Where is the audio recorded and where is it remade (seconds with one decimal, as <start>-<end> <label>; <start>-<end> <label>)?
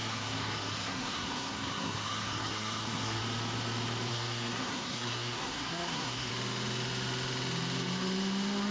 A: 0.0-3.2 remade; 3.2-4.1 recorded; 4.1-6.3 remade; 6.3-8.7 recorded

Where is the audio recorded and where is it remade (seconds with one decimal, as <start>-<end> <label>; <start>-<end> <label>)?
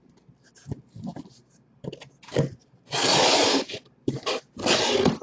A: 0.0-1.1 recorded; 1.1-1.9 remade; 1.9-2.6 recorded; 2.6-4.5 remade; 4.5-5.2 recorded